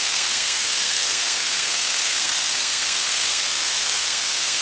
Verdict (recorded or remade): remade